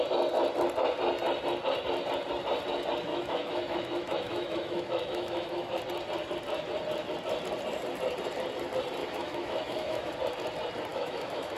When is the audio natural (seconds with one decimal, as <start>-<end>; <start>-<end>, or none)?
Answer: 0.0-3.1; 5.8-9.0; 10.1-10.9